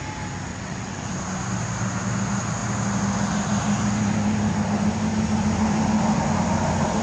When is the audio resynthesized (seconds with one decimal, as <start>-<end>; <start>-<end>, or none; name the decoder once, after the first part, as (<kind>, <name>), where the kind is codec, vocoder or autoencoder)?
0.5-1.1 (vocoder, WaveNeXt)